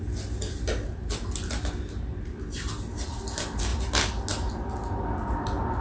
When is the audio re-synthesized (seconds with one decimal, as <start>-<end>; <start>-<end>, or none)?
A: none